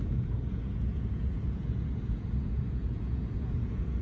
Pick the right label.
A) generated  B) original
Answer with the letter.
A